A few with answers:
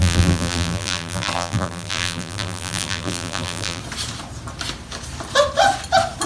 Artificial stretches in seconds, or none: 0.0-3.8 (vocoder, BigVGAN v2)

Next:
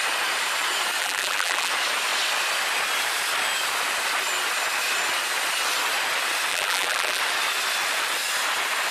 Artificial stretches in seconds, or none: 1.0-1.7 (vocoder, BigVGAN v2); 6.5-7.2

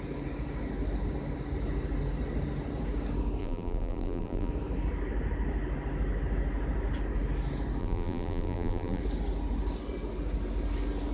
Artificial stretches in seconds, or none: 3.4-4.5 (vocoder, BigVGAN v2); 7.8-9.0

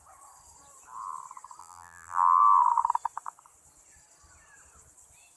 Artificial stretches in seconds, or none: 1.6-2.4 (vocoder, BigVGAN v2)